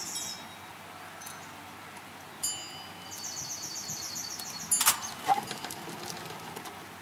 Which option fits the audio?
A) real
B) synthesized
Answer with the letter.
A